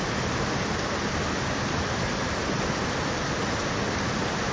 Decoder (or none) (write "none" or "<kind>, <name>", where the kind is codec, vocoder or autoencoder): none